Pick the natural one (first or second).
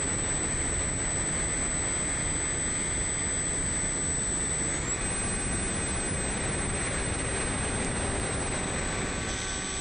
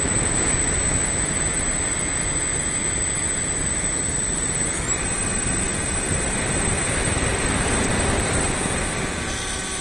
first